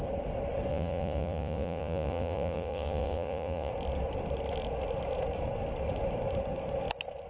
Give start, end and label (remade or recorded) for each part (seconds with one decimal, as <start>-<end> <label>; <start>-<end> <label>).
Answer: 0.0-0.7 recorded; 0.7-3.7 remade; 3.7-7.3 recorded